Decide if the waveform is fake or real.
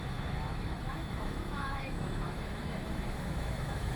fake